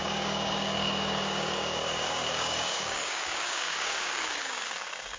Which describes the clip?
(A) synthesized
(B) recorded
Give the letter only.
A